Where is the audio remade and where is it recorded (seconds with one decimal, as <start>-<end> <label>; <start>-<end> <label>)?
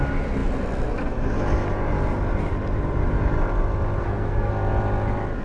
0.0-4.0 recorded; 4.0-4.5 remade; 4.5-5.4 recorded